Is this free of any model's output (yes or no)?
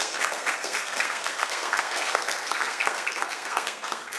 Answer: no